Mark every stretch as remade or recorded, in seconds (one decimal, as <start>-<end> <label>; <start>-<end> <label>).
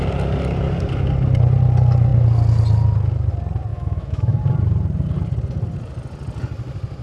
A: 0.0-3.7 recorded; 3.7-4.4 remade; 4.4-7.0 recorded